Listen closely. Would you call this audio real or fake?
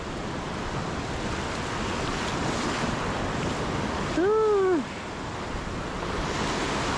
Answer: real